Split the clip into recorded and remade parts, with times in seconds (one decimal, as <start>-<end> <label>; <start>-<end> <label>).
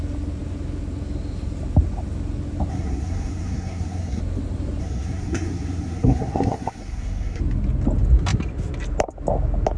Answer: 0.0-2.7 recorded; 2.7-4.2 remade; 4.2-4.8 recorded; 4.8-7.4 remade; 7.4-9.8 recorded